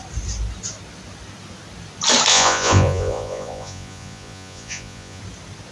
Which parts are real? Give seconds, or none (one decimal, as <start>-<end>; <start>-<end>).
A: 0.0-2.3; 5.2-5.7